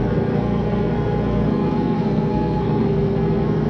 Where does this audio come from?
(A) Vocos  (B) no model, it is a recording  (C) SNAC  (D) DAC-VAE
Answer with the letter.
C